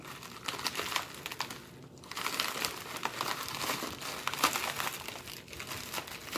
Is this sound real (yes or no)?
yes